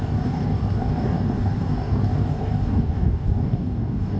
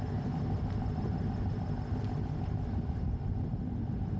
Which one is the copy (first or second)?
first